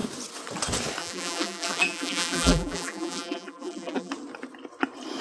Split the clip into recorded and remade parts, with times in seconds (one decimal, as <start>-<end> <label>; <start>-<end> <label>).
0.0-1.0 recorded; 1.0-4.1 remade; 4.1-5.2 recorded